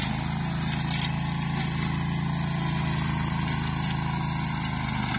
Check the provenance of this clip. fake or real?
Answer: real